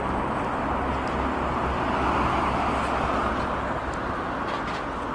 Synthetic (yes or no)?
no